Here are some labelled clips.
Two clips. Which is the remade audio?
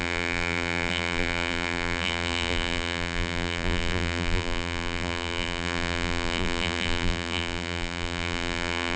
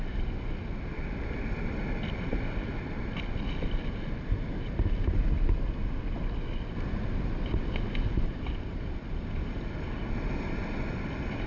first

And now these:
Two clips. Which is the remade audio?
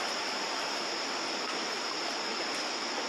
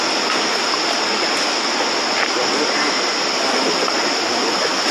first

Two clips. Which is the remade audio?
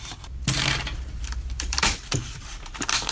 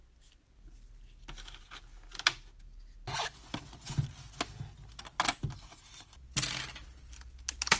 first